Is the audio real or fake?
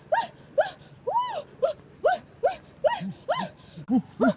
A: real